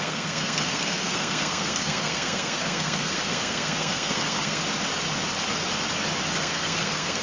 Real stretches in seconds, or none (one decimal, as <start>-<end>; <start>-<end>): 4.6-6.4